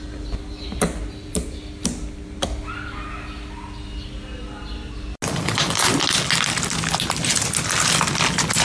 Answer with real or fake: real